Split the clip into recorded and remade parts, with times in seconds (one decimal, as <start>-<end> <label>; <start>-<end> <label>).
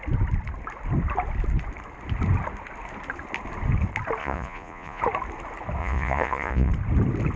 0.0-4.2 recorded; 4.2-5.0 remade; 5.0-5.8 recorded; 5.8-6.7 remade; 6.7-7.4 recorded